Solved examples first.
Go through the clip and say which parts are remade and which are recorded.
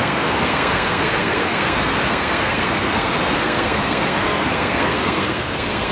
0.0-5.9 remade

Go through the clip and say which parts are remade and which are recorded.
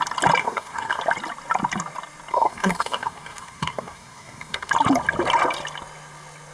0.0-0.4 recorded; 0.4-1.0 remade; 1.0-2.3 recorded; 2.3-4.7 remade; 4.7-6.5 recorded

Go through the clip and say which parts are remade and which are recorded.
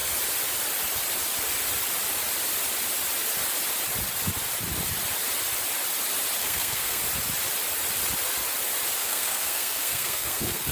0.0-6.4 recorded; 6.4-7.0 remade; 7.0-9.0 recorded; 9.0-10.7 remade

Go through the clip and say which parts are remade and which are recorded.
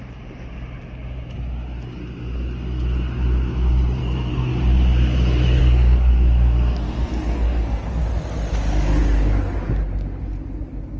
0.0-4.0 recorded; 4.0-4.5 remade; 4.5-5.6 recorded; 5.6-8.0 remade; 8.0-11.0 recorded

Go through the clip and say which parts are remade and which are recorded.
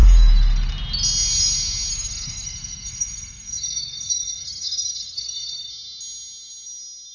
0.0-0.7 remade; 0.7-1.9 recorded; 1.9-5.7 remade; 5.7-7.1 recorded